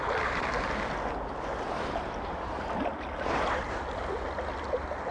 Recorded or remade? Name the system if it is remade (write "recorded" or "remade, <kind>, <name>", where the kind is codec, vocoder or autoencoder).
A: recorded